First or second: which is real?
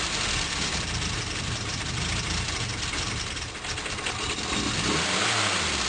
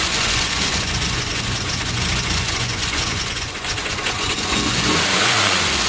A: first